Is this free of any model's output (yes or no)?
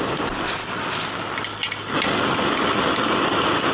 yes